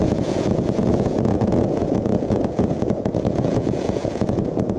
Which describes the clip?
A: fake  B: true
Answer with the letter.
A